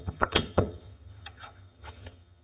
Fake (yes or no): yes